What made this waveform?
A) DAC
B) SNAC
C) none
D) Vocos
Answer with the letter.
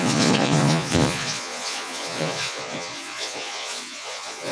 D